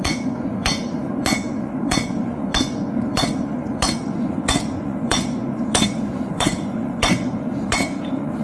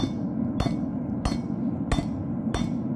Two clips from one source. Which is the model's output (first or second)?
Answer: first